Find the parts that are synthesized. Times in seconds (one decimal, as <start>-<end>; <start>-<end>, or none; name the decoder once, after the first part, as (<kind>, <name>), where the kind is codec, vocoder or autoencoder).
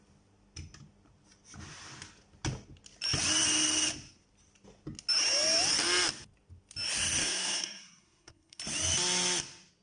7.2-8.6 (codec, SNAC)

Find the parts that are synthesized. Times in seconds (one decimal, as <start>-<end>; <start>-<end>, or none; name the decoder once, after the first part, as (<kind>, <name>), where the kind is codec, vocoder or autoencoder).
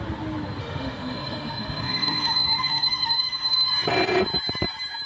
0.6-3.7 (autoencoder, DAC-VAE)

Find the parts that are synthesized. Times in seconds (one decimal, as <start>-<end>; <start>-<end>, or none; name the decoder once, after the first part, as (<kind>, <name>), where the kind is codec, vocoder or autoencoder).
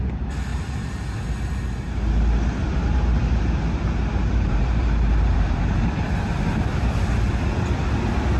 0.5-1.1 (vocoder, BigVGAN v2); 4.2-6.6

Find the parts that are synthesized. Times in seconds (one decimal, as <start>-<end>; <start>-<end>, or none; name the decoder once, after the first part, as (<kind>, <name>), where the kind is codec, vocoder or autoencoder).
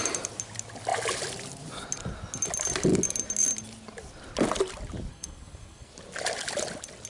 5.1-5.9 (codec, SNAC)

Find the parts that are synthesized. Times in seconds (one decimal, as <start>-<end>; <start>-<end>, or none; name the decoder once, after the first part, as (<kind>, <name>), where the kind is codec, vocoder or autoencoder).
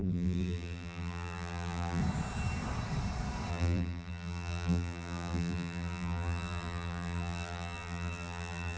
0.0-2.0 (vocoder, BigVGAN v2); 3.5-8.8